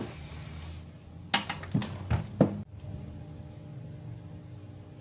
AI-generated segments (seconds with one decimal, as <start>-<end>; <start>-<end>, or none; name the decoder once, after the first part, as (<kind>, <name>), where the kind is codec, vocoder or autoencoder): none